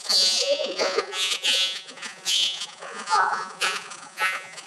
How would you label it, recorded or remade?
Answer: remade